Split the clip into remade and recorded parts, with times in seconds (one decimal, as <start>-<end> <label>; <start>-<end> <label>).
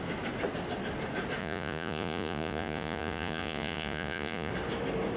0.0-1.4 recorded; 1.4-4.5 remade; 4.5-5.2 recorded